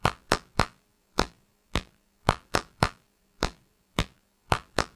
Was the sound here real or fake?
fake